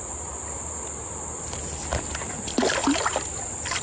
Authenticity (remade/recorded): recorded